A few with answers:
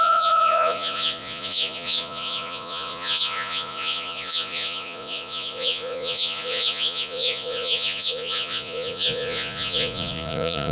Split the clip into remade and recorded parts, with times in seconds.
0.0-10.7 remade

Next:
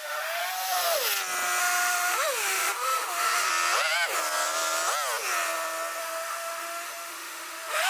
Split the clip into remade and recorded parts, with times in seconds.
0.0-0.4 remade; 0.4-1.6 recorded; 1.6-3.5 remade; 3.5-6.0 recorded; 6.0-7.9 remade